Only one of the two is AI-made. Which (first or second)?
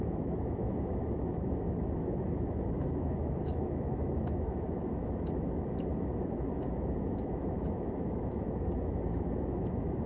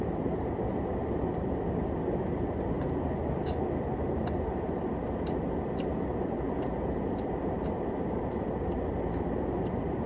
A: first